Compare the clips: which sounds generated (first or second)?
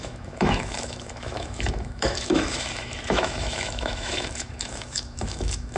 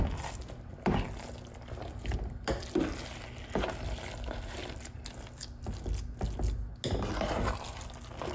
first